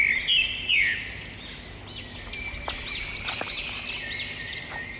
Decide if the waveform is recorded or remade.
recorded